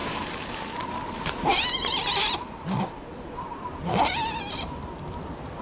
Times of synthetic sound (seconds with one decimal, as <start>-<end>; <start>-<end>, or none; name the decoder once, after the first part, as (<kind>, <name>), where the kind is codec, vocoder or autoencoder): 0.0-0.6 (vocoder, BigVGAN v2); 1.5-4.9